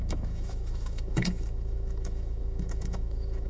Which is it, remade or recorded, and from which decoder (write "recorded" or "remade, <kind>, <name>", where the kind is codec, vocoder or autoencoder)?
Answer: remade, autoencoder, DAC-VAE